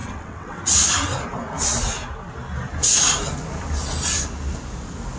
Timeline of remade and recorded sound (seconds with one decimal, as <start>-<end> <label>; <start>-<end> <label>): 0.0-0.6 remade; 0.6-5.2 recorded